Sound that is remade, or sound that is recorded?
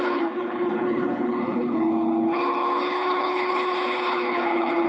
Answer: remade